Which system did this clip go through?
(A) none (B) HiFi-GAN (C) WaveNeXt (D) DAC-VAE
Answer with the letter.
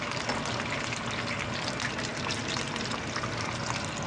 A